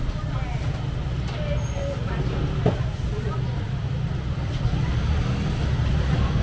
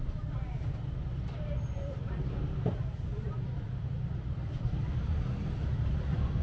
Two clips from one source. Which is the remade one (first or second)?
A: second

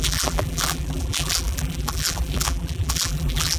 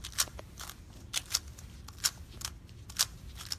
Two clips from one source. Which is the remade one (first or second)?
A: first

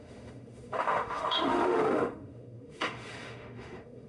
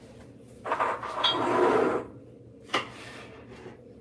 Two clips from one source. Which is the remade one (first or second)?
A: first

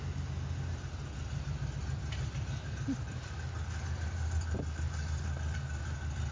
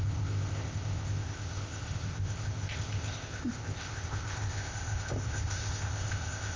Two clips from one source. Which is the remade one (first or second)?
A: second